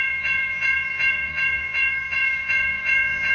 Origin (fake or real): fake